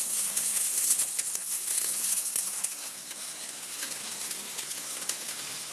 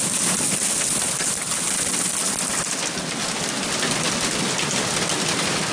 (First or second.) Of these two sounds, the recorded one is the second